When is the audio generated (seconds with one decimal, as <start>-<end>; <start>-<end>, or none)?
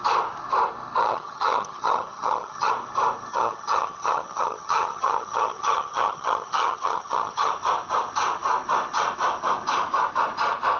1.0-2.7; 3.3-7.5